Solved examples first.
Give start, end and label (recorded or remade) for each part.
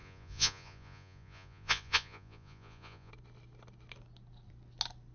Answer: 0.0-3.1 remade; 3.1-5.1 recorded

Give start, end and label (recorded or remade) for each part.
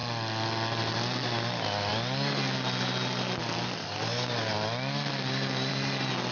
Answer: 0.0-6.3 recorded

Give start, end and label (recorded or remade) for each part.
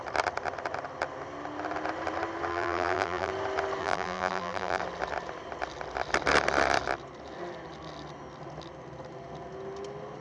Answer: 0.0-2.5 recorded; 2.5-3.3 remade; 3.3-3.8 recorded; 3.8-4.8 remade; 4.8-10.2 recorded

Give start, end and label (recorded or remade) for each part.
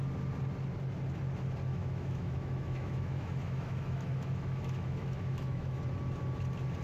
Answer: 0.0-1.7 recorded; 1.7-5.8 remade; 5.8-6.8 recorded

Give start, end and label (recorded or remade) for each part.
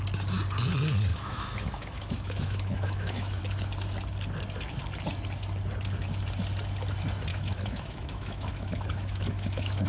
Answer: 0.0-1.1 recorded; 1.1-3.4 remade; 3.4-7.3 recorded; 7.3-9.9 remade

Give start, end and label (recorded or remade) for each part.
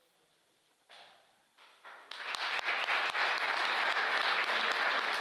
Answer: 0.0-1.6 recorded; 1.6-2.3 remade; 2.3-5.2 recorded